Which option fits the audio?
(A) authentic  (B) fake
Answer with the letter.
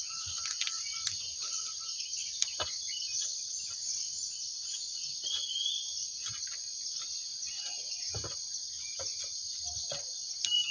A